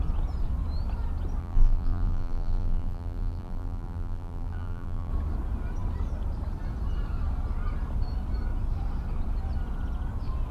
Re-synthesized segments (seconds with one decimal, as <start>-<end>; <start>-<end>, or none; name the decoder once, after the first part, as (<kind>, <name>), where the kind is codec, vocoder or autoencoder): 1.4-5.1 (vocoder, BigVGAN v2)